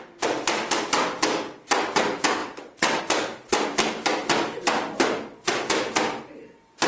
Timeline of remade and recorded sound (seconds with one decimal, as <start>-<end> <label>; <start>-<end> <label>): 0.0-2.4 recorded; 2.4-3.0 remade; 3.0-6.9 recorded